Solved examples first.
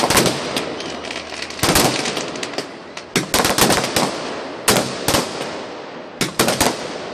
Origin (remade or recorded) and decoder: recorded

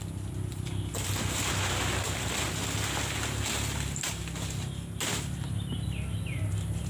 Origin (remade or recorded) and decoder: recorded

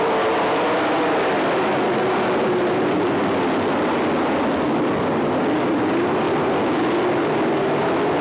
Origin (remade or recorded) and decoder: recorded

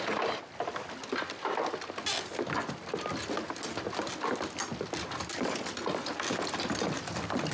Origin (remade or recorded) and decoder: recorded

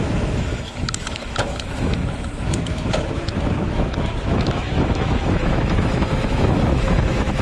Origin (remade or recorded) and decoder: remade, autoencoder, DAC-VAE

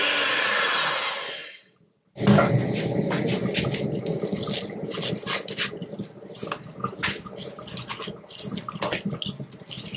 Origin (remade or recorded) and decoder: recorded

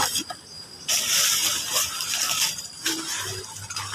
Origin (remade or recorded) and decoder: recorded